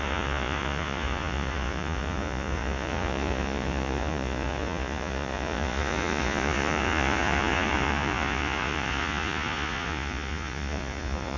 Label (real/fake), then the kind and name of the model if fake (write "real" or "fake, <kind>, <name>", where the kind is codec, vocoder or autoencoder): fake, vocoder, Vocos